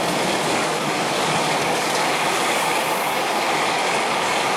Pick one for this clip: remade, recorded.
remade